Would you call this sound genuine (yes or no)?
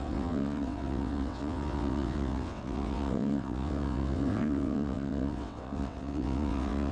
no